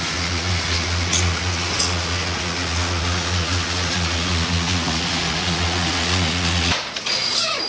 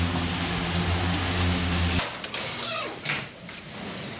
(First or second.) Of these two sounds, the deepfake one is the first